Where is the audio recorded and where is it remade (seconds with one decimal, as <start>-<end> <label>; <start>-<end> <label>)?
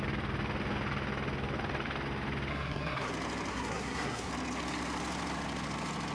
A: 0.0-2.5 recorded; 2.5-3.1 remade; 3.1-3.5 recorded; 3.5-4.3 remade; 4.3-6.1 recorded